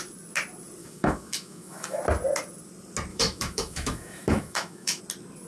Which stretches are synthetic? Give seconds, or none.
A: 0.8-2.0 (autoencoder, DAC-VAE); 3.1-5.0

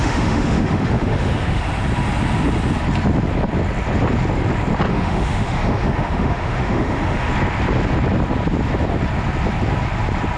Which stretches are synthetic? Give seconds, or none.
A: 0.0-1.6 (autoencoder, DAC-VAE); 4.9-7.3